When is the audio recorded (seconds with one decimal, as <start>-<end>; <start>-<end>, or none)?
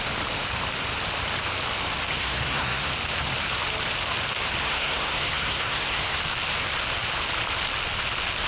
0.0-2.1; 2.9-4.6; 6.2-8.5